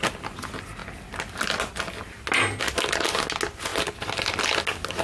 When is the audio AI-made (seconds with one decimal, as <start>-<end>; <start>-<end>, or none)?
none